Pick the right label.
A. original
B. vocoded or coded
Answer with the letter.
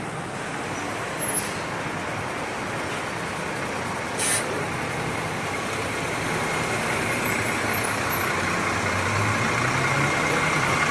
A